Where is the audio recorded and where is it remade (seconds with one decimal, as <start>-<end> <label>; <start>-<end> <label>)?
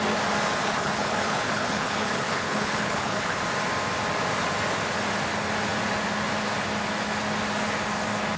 0.0-0.6 recorded; 0.6-3.4 remade; 3.4-8.4 recorded